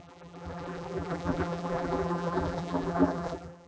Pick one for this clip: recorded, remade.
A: remade